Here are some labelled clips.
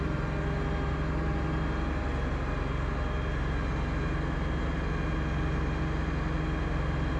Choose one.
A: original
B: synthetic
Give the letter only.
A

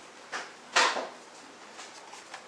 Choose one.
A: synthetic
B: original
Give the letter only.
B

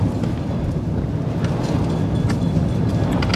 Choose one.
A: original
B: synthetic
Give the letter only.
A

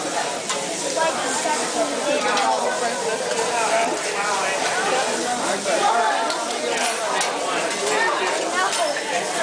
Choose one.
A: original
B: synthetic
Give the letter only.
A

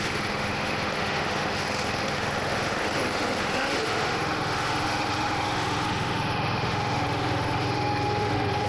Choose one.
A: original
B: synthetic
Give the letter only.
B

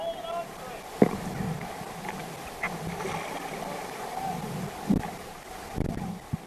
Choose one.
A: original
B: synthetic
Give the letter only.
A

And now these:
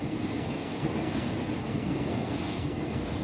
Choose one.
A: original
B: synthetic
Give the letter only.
B